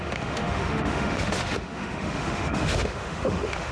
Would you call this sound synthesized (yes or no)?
yes